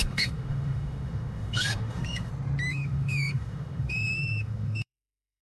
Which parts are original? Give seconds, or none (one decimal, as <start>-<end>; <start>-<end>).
2.3-2.7